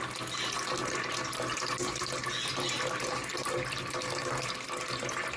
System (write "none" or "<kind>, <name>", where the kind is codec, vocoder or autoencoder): none